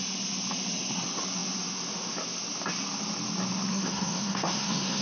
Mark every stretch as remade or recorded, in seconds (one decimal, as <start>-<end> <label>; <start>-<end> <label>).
0.0-3.7 recorded; 3.7-5.0 remade